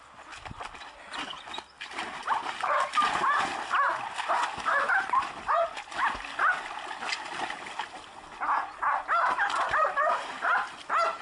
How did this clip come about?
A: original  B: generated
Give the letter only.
A